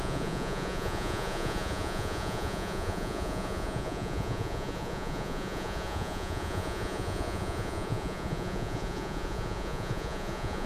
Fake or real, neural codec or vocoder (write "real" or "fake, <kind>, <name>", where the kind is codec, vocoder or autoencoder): fake, vocoder, Vocos